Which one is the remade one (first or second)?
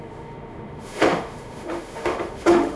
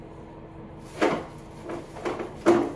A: first